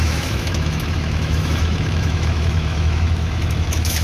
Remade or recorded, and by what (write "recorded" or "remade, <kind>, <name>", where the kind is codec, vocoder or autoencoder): remade, autoencoder, DAC-VAE